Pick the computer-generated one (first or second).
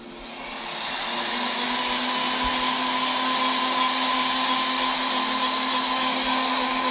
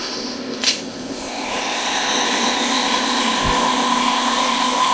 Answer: second